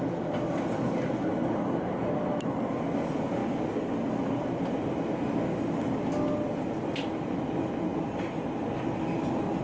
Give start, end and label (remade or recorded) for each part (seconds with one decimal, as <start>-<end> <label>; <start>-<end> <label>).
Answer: 0.0-9.6 recorded